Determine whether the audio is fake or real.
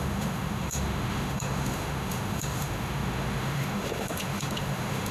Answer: fake